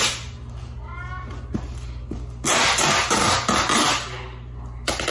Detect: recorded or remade recorded